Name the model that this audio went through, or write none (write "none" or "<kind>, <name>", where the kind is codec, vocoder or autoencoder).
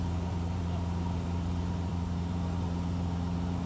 vocoder, BigVGAN v2